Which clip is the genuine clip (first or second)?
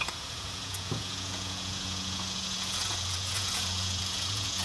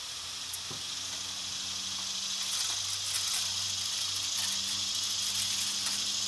second